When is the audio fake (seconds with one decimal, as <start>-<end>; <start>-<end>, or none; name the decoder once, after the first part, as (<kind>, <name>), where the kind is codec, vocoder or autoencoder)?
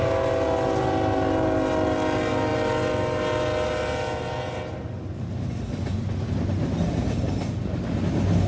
none